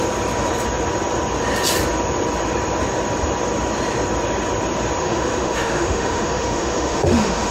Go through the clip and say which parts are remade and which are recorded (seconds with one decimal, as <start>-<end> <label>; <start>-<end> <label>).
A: 0.0-5.0 recorded; 5.0-7.5 remade